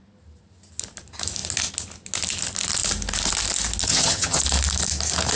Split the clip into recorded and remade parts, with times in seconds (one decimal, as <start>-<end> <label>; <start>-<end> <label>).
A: 0.0-3.9 recorded; 3.9-4.4 remade; 4.4-5.4 recorded